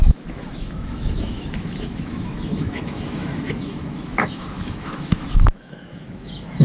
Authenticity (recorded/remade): remade